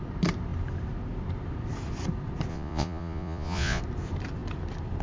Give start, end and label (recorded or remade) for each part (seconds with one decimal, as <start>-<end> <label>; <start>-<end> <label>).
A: 0.0-2.5 recorded; 2.5-3.8 remade; 3.8-5.0 recorded